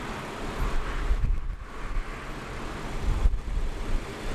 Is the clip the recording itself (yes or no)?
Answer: yes